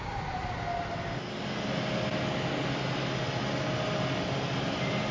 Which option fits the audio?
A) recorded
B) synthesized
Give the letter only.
A